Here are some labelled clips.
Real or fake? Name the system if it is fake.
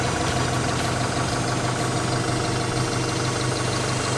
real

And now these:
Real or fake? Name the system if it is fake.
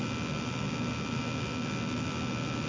real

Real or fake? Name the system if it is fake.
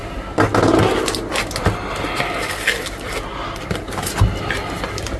real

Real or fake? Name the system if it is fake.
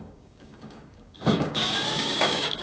fake, codec, DAC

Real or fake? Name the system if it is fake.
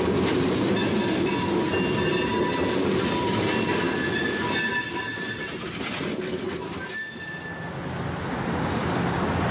real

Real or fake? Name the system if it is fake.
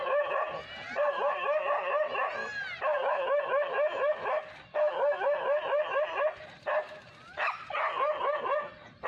real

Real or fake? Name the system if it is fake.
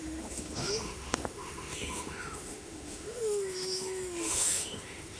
fake, autoencoder, DAC-VAE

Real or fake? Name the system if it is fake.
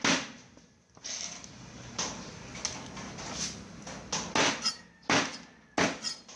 real